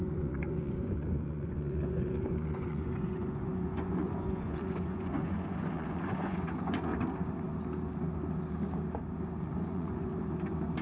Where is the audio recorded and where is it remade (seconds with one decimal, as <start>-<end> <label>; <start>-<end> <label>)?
0.0-6.9 remade; 6.9-9.4 recorded; 9.4-10.1 remade; 10.1-10.8 recorded